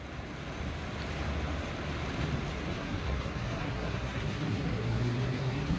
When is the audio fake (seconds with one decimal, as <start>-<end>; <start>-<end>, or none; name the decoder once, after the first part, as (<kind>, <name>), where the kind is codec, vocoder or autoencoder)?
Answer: 2.5-5.8 (codec, SNAC)